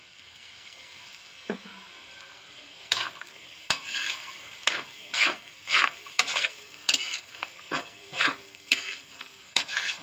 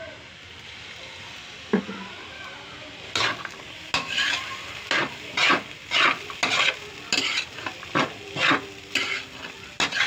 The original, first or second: second